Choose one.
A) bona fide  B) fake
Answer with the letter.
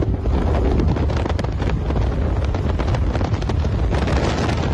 A